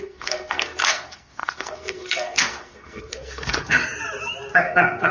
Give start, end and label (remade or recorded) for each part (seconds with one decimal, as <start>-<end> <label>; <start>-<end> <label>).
0.0-3.8 remade; 3.8-4.5 recorded; 4.5-5.1 remade